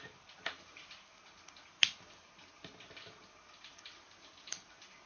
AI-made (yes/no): no